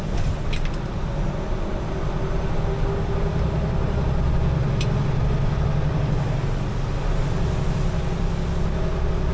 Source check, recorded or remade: recorded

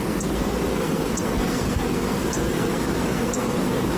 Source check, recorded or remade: remade